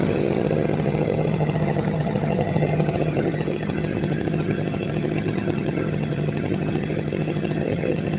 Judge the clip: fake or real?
fake